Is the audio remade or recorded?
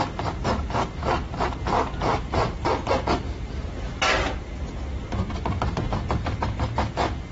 recorded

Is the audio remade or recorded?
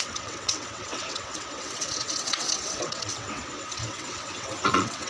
remade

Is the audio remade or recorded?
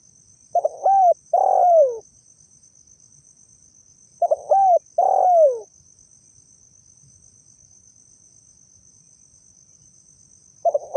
recorded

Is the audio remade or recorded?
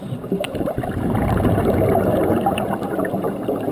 remade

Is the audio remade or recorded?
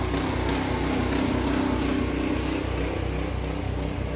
recorded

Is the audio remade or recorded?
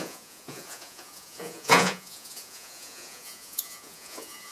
remade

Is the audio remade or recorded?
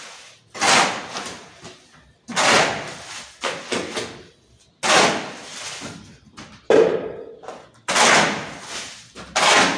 recorded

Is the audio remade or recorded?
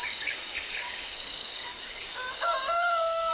remade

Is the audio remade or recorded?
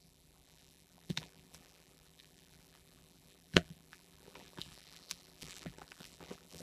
remade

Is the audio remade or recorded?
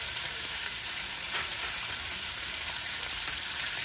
remade